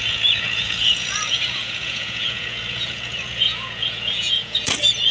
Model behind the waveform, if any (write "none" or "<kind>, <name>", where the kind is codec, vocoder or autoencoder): vocoder, Vocos